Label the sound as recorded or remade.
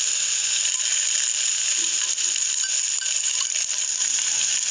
recorded